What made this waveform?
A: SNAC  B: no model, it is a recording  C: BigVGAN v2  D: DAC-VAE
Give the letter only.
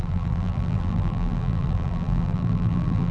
C